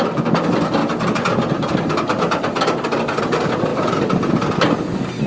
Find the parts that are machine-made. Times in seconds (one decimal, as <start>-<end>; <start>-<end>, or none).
none